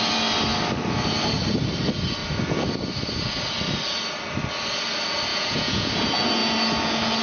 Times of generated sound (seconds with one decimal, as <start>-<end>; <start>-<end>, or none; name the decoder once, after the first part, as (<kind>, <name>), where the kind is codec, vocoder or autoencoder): 5.3-5.9 (vocoder, Vocos)